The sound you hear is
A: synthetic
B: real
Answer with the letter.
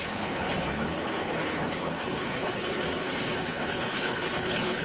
A